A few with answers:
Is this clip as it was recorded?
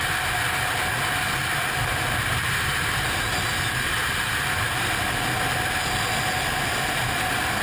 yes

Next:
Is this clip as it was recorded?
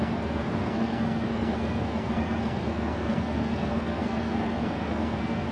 no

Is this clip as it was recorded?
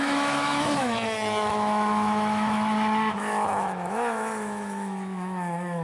no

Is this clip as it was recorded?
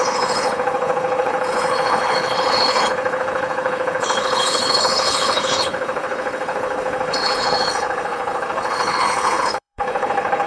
no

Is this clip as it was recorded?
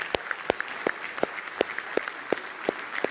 no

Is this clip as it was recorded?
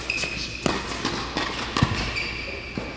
yes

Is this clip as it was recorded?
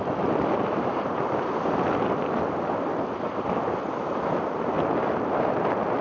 yes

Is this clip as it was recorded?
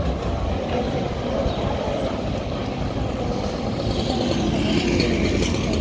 yes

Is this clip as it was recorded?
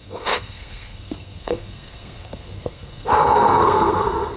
no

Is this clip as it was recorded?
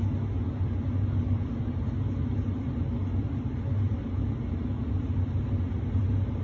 yes